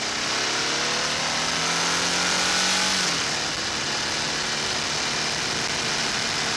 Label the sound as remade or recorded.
recorded